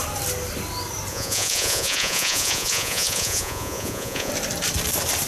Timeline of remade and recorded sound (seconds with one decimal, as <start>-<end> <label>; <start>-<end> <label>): 0.0-1.1 recorded; 1.1-4.3 remade; 4.3-5.3 recorded